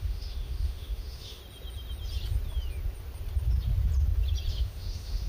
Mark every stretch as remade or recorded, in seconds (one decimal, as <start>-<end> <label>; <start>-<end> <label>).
0.0-1.4 remade; 1.4-4.5 recorded; 4.5-5.3 remade